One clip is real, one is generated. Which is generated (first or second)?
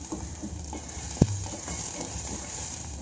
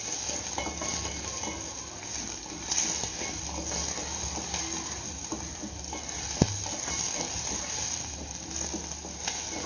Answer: first